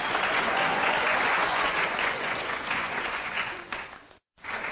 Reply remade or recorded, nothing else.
remade